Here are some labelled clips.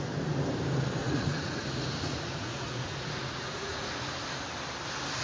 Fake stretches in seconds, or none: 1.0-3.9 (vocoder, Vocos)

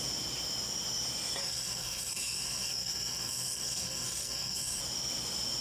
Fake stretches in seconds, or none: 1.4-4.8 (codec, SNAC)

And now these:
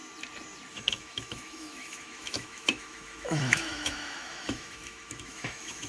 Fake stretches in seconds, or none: 0.7-5.9 (autoencoder, DAC-VAE)

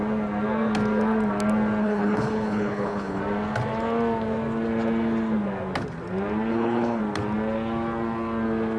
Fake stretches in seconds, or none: 1.8-3.2 (codec, HILCodec); 6.5-7.0